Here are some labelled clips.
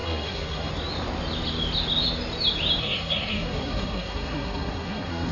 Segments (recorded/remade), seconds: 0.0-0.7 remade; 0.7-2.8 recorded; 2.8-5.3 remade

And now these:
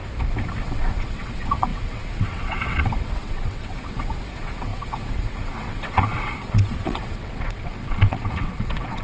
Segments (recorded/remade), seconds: 0.0-0.6 recorded; 0.6-9.0 remade

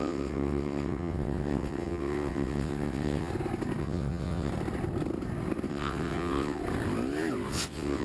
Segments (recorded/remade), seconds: 0.0-3.3 remade; 3.3-3.8 recorded; 3.8-4.5 remade; 4.5-5.7 recorded; 5.7-6.6 remade; 6.6-7.5 recorded; 7.5-8.0 remade

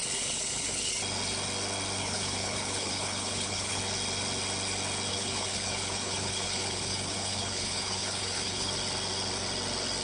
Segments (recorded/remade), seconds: 0.0-0.9 remade; 0.9-2.0 recorded; 2.0-3.8 remade; 3.8-5.1 recorded; 5.1-8.7 remade; 8.7-10.0 recorded

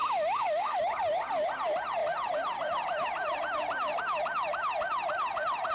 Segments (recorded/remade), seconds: 0.0-0.8 remade; 0.8-5.7 recorded

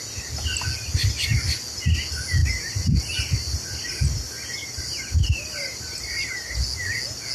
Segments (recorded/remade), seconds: 0.0-2.4 recorded; 2.4-4.0 remade; 4.0-4.6 recorded; 4.6-6.6 remade; 6.6-7.3 recorded

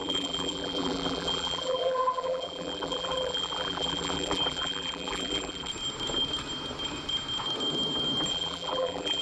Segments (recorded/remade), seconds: 0.0-5.7 remade; 5.7-8.3 recorded; 8.3-9.2 remade

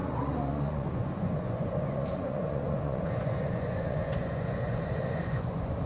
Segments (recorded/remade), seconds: 0.0-5.9 remade